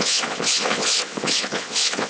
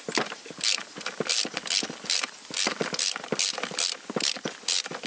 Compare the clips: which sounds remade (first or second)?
first